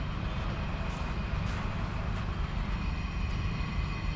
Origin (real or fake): real